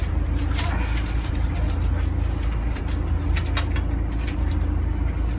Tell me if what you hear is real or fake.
real